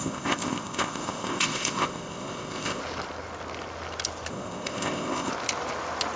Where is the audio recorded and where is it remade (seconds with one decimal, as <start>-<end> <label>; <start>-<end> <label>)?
0.0-2.8 remade; 2.8-4.3 recorded; 4.3-5.3 remade; 5.3-6.2 recorded